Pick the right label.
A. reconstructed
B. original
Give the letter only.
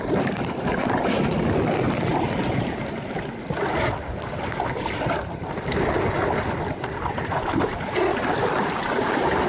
B